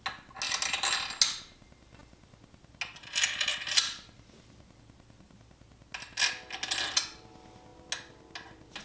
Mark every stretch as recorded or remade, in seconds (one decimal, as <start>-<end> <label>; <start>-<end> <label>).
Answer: 0.0-3.5 recorded; 3.5-4.8 remade; 4.8-8.8 recorded